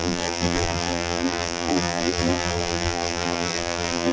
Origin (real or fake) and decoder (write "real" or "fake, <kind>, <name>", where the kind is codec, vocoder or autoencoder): fake, vocoder, BigVGAN v2